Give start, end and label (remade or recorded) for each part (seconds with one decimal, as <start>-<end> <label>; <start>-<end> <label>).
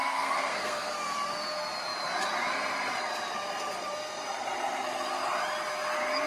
0.0-0.9 remade; 0.9-6.3 recorded